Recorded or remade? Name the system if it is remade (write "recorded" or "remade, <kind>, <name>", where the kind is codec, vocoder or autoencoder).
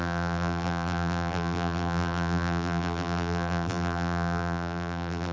remade, vocoder, BigVGAN v2